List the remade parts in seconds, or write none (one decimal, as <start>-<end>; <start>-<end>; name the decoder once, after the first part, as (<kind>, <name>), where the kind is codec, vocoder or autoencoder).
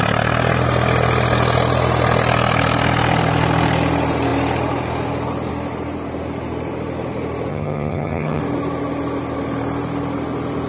7.5-8.4 (vocoder, HiFi-GAN)